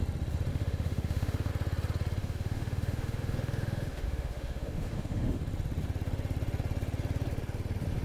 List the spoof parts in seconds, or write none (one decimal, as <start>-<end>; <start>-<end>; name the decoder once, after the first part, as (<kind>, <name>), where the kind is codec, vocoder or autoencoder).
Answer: 0.5-1.5 (autoencoder, DAC-VAE); 2.2-5.4